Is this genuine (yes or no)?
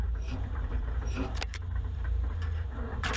no